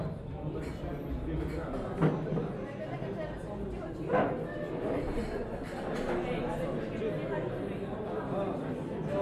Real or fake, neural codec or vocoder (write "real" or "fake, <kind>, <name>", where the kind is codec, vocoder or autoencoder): real